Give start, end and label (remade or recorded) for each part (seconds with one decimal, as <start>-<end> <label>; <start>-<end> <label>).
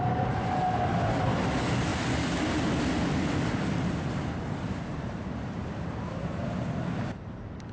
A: 0.0-7.7 recorded